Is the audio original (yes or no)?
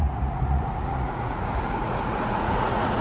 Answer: no